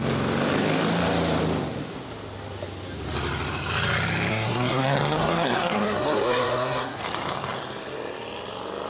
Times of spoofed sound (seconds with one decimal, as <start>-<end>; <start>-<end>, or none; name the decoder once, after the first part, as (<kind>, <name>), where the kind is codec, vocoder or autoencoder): 4.3-7.0 (codec, SNAC)